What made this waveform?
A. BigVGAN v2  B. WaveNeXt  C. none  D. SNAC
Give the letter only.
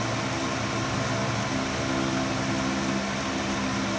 C